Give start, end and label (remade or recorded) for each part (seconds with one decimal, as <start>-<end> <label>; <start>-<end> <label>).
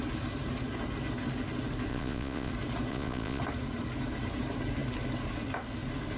0.0-1.9 recorded; 1.9-2.5 remade; 2.5-2.9 recorded; 2.9-3.4 remade; 3.4-6.2 recorded